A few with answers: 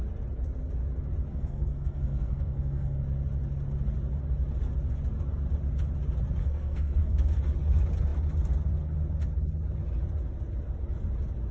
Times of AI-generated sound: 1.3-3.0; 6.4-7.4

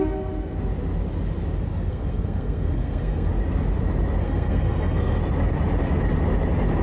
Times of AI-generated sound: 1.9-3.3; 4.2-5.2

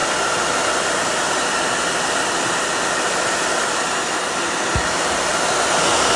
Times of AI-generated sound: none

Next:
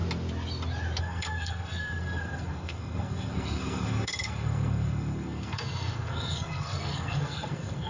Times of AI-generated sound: 1.0-7.9

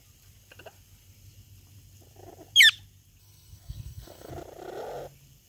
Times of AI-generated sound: 3.2-4.3